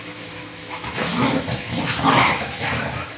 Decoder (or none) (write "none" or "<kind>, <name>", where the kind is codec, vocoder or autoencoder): autoencoder, DAC-VAE